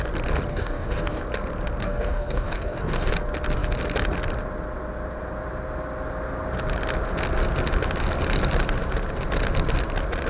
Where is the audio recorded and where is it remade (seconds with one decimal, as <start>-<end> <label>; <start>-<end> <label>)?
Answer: 0.0-0.5 recorded; 0.5-1.2 remade; 1.2-1.8 recorded; 1.8-3.1 remade; 3.1-10.3 recorded